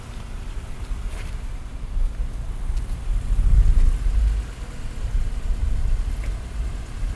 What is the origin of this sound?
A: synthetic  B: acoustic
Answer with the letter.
B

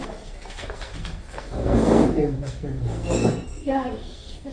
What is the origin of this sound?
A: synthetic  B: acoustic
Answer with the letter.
A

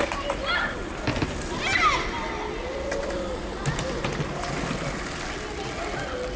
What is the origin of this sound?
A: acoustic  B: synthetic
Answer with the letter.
A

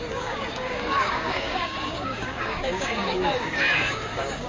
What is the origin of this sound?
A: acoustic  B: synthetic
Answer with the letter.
B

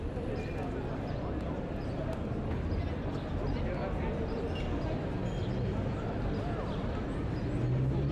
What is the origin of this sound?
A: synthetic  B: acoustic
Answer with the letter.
B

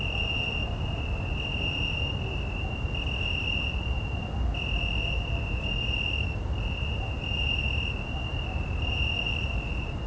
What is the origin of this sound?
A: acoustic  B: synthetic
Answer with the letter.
A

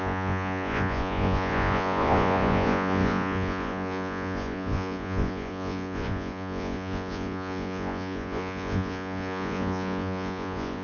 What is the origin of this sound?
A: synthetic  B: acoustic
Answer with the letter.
A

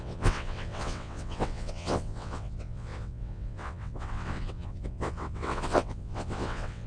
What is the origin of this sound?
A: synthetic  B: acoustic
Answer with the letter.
A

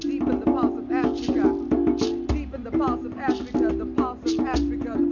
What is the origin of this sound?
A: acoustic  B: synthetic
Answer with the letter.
A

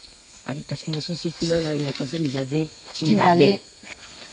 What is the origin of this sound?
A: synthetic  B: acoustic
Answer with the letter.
A